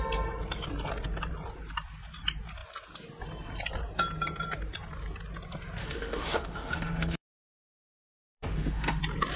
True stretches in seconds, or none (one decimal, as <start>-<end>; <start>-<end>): 0.0-5.8; 9.0-9.4